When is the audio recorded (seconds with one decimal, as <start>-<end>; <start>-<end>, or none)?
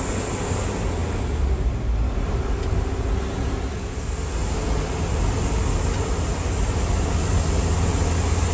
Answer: 0.0-8.5